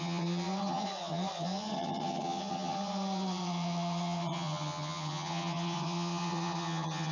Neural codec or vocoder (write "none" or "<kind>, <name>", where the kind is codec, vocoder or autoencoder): vocoder, HiFi-GAN